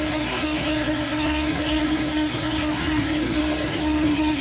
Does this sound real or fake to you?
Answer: fake